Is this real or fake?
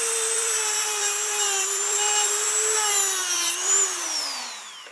fake